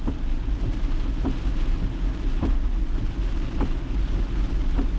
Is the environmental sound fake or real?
real